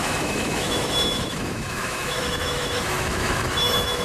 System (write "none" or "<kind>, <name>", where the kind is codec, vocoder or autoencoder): autoencoder, DAC-VAE